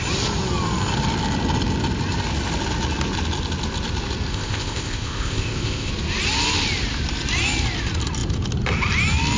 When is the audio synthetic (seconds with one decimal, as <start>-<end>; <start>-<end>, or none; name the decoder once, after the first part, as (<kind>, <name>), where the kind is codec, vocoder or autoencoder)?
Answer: 4.3-5.9 (codec, ZipCodec)